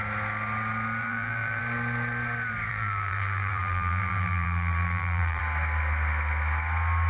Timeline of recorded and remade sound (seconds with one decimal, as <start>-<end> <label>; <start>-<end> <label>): 0.0-1.0 recorded; 1.0-1.6 remade; 1.6-2.7 recorded; 2.7-5.4 remade; 5.4-7.1 recorded